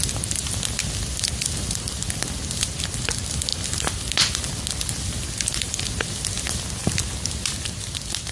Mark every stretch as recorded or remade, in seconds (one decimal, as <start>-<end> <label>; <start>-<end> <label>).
0.0-8.3 recorded